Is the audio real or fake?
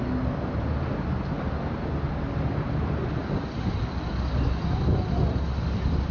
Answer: real